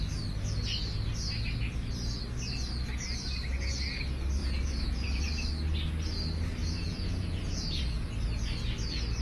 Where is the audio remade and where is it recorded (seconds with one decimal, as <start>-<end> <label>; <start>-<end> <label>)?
0.0-4.4 recorded; 4.4-5.2 remade; 5.2-6.6 recorded; 6.6-8.1 remade; 8.1-9.2 recorded